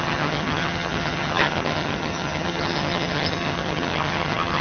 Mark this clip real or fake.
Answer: fake